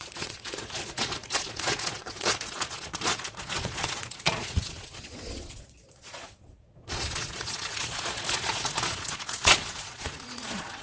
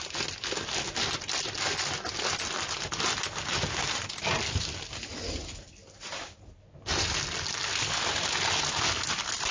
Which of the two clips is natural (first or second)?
second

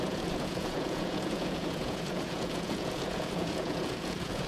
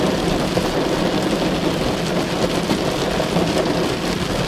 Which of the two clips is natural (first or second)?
second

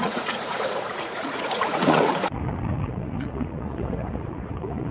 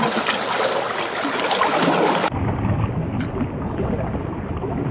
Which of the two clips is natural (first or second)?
second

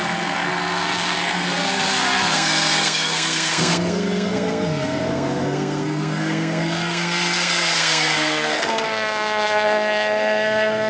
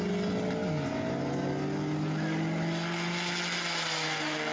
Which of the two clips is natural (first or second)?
second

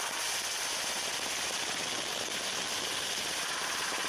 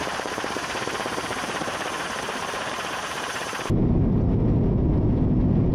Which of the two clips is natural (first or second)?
first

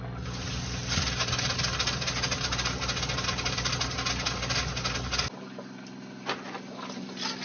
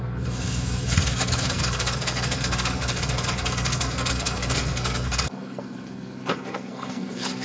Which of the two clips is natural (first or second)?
first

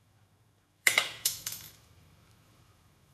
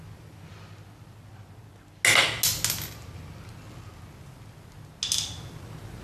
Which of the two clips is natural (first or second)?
second